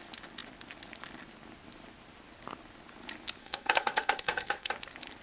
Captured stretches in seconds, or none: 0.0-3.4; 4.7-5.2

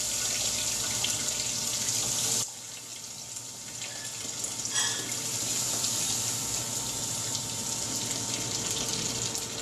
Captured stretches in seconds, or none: 0.0-9.6

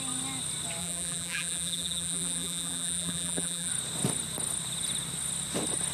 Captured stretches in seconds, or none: 0.0-0.8; 3.7-5.9

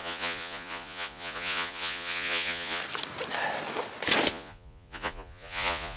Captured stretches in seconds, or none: 2.8-4.3

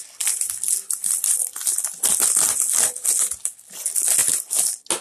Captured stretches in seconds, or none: 0.0-5.0

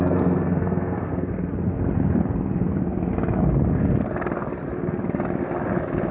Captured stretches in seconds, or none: 1.5-6.1

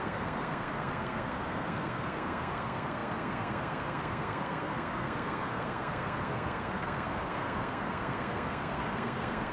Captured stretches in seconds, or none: none

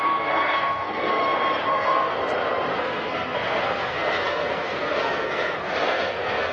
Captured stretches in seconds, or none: 1.2-1.7; 2.2-2.7